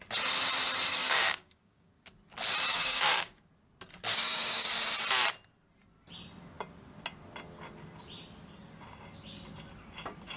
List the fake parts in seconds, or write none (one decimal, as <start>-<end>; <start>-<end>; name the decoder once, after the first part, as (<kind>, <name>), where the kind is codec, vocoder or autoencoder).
0.9-1.9 (codec, DAC); 2.7-3.5; 4.1-4.7